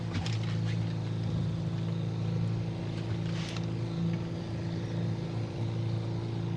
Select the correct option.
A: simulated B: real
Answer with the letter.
B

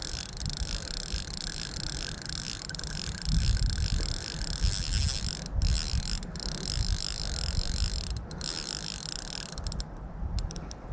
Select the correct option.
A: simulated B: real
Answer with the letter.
B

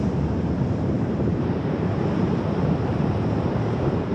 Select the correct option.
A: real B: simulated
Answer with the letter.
B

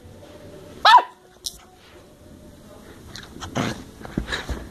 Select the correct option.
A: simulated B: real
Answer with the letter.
B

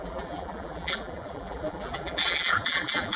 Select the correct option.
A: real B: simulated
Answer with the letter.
B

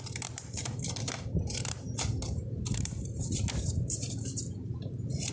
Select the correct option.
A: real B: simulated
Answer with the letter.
B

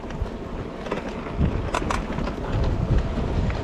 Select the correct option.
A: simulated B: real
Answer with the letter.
B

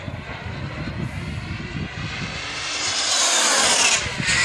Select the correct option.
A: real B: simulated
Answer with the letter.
A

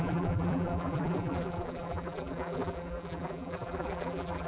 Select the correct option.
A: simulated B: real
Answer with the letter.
A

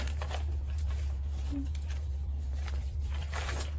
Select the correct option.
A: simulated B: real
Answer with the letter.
A